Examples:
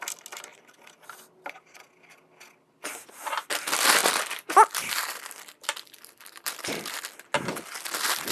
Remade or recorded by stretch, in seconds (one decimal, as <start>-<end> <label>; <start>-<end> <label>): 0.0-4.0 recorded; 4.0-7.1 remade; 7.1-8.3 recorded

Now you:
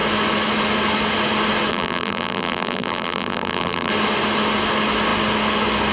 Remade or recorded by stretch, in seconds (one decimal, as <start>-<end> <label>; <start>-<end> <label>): 0.0-1.7 recorded; 1.7-3.9 remade; 3.9-5.9 recorded

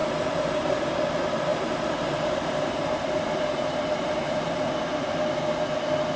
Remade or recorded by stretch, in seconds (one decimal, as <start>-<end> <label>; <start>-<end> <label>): 0.0-0.9 remade; 0.9-1.5 recorded; 1.5-4.7 remade; 4.7-6.2 recorded

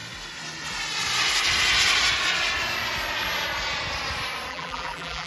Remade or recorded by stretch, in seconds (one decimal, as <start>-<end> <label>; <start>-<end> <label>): 0.0-4.5 recorded; 4.5-5.3 remade